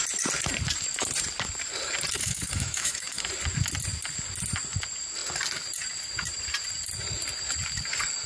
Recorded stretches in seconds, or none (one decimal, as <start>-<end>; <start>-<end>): 0.0-2.2; 3.3-8.3